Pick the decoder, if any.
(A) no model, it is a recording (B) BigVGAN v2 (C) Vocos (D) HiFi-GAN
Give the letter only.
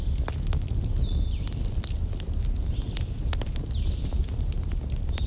A